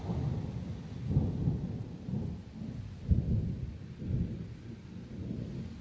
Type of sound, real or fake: real